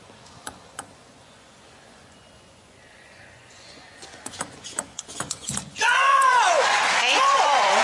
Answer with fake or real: fake